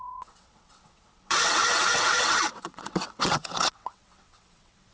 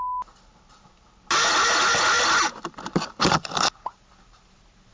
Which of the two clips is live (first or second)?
second